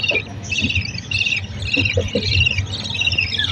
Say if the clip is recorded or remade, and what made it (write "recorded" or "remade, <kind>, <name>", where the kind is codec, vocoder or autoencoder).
recorded